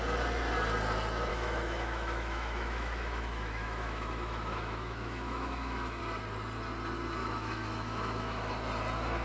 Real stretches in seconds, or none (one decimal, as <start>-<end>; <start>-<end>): 0.0-1.3; 6.0-7.2; 8.5-9.2